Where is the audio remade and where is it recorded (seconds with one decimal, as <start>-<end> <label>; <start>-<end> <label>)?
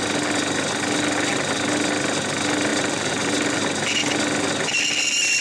0.0-2.7 recorded; 2.7-3.6 remade; 3.6-5.4 recorded